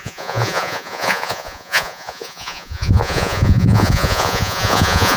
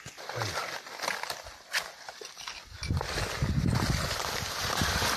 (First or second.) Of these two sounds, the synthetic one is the first